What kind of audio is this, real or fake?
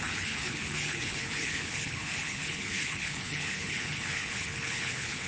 fake